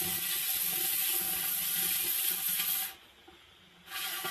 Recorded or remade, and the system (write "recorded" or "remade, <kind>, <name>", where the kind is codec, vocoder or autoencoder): recorded